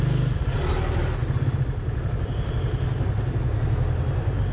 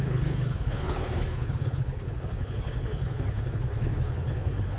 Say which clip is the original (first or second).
first